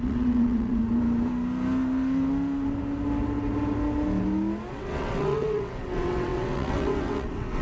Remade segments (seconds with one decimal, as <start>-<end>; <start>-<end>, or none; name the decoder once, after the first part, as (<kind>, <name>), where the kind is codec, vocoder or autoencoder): 0.0-0.8 (vocoder, WaveNeXt); 4.7-7.6